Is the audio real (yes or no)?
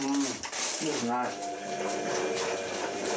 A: yes